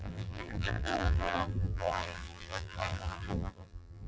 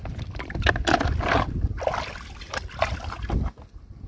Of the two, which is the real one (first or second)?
second